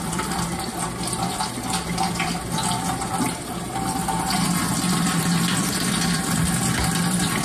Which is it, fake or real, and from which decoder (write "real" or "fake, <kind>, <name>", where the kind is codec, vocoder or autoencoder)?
fake, vocoder, BigVGAN v2